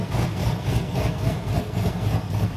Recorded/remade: remade